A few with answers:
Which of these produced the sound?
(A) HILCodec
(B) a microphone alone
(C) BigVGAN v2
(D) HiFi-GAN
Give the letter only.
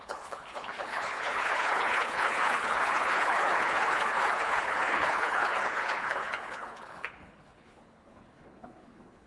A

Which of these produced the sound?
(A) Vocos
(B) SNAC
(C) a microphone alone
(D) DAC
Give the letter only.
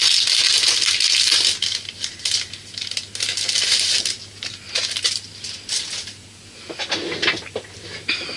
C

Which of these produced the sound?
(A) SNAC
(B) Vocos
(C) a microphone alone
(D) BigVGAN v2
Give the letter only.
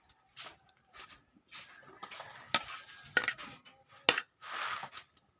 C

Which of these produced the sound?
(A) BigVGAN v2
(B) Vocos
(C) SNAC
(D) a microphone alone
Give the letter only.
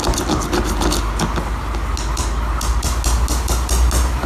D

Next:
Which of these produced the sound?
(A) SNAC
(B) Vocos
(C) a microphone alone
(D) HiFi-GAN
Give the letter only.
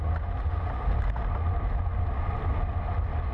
C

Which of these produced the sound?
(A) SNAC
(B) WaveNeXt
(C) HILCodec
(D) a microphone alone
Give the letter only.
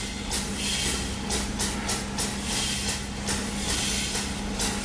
D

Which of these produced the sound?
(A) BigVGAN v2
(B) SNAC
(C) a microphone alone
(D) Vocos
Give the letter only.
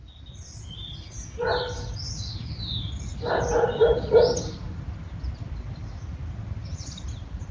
C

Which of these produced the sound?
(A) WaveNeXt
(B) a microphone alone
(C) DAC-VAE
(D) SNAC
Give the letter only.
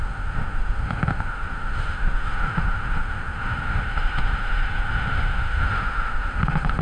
C